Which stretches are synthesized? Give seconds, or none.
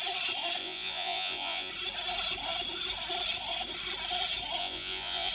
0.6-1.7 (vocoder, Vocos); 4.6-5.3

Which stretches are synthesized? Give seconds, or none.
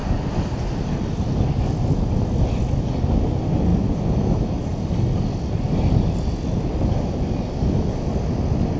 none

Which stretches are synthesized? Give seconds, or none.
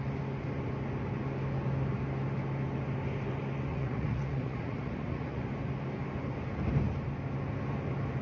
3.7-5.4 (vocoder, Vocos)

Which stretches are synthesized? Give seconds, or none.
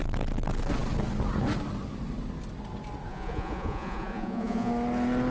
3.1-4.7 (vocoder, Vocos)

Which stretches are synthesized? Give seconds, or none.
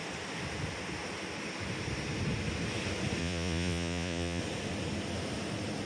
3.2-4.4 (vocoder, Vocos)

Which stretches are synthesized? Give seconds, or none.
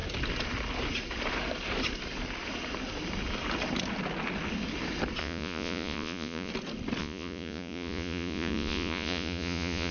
5.2-6.5 (vocoder, Vocos); 7.0-9.9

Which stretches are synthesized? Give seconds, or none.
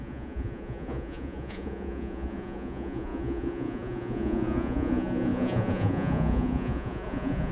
0.0-7.5 (vocoder, Vocos)